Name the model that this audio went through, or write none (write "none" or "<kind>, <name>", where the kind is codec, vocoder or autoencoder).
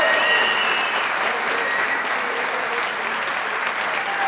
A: none